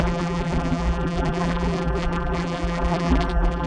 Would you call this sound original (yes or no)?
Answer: no